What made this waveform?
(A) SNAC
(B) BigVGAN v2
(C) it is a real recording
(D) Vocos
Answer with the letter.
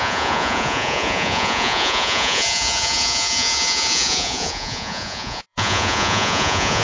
D